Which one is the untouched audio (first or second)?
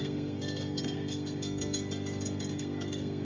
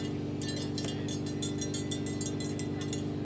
second